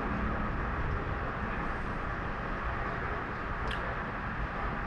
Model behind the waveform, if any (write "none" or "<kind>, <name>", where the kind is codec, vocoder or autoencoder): none